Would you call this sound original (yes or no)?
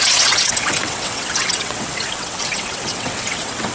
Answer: no